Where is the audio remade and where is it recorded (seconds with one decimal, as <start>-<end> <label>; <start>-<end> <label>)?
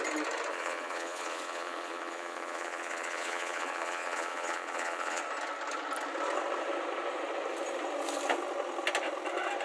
0.0-0.5 recorded; 0.5-5.2 remade; 5.2-9.6 recorded